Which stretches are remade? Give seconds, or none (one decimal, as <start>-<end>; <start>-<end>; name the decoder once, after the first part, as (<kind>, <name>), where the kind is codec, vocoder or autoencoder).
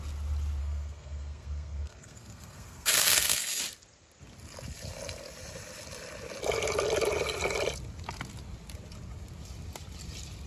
0.6-3.6 (codec, SNAC)